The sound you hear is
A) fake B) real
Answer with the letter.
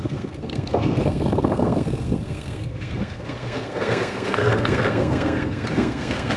A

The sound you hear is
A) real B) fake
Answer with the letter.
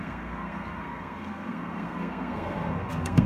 B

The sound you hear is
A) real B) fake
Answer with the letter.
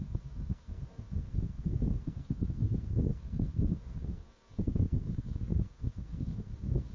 B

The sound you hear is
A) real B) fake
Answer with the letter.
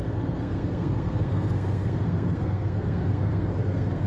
B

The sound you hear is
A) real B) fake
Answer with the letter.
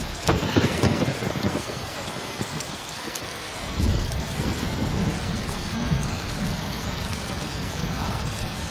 B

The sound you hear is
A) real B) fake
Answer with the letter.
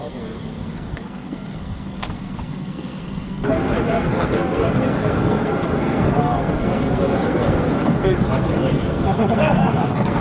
B